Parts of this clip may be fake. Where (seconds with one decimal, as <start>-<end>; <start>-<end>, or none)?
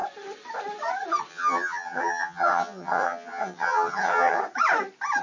1.3-4.4